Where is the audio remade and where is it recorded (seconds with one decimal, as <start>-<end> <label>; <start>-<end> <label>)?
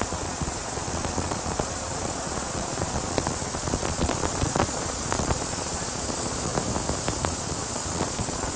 0.0-6.5 remade; 6.5-7.2 recorded; 7.2-8.6 remade